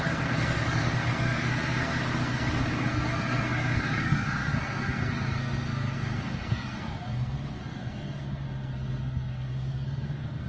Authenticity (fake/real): fake